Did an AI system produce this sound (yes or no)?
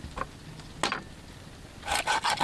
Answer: no